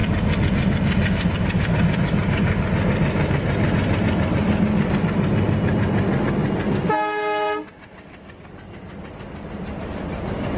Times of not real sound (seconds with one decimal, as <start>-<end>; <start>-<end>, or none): none